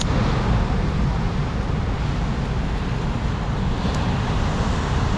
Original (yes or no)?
yes